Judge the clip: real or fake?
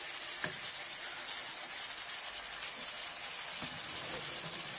real